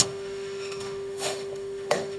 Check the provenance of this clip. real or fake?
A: fake